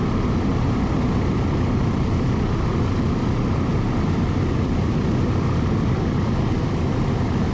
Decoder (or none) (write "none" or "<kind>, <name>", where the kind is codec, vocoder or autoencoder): none